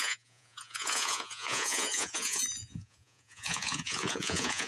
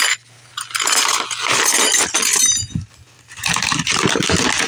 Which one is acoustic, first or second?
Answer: second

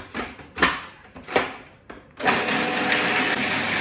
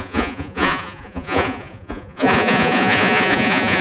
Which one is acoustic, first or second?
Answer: first